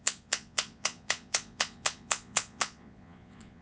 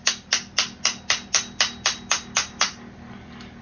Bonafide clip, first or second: second